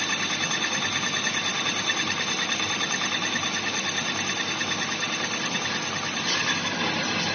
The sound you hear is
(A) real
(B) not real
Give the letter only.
A